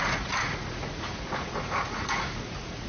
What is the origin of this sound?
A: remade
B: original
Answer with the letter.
A